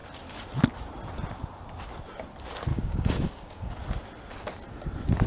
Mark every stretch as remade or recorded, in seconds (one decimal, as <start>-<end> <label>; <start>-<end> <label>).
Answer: 0.0-2.7 recorded; 2.7-3.8 remade; 3.8-5.3 recorded